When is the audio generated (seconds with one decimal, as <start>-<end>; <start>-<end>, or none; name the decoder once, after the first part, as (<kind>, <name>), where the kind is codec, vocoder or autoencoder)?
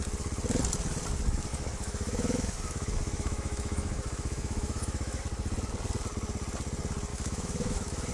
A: 1.5-5.2 (autoencoder, DAC-VAE); 7.1-8.1